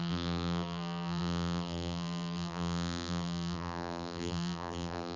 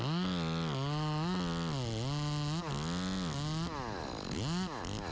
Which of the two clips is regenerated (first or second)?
first